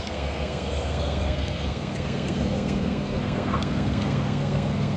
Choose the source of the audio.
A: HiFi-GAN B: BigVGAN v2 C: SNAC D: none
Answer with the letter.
C